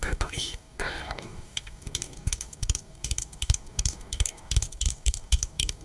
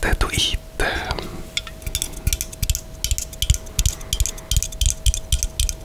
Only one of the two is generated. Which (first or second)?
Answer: first